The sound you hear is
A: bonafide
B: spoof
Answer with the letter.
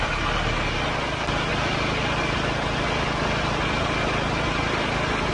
A